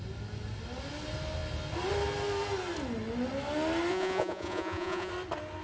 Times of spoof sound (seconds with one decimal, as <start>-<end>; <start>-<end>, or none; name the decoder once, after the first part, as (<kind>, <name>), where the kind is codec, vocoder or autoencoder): 3.9-5.1 (vocoder, Vocos)